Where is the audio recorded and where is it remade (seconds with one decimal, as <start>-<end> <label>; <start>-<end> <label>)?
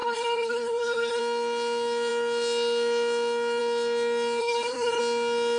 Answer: 0.0-1.2 remade; 1.2-4.4 recorded; 4.4-5.0 remade; 5.0-5.6 recorded